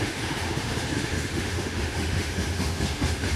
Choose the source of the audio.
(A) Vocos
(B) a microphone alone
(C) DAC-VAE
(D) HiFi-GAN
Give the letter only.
C